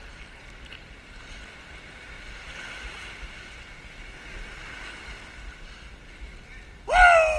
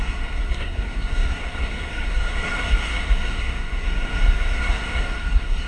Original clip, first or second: first